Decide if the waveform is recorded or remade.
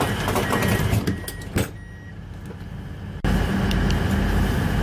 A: recorded